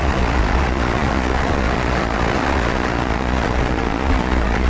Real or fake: fake